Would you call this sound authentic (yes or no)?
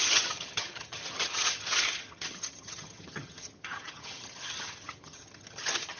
no